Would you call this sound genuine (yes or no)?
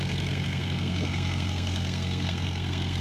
no